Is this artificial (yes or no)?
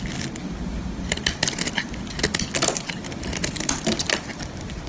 no